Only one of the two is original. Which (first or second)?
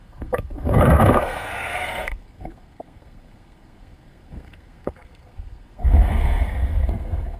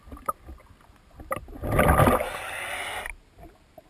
second